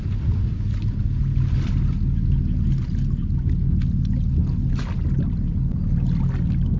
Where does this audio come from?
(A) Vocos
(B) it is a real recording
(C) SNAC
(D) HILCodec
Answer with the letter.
B